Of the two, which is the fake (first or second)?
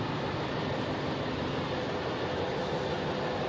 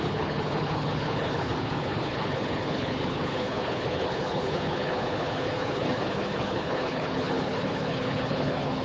second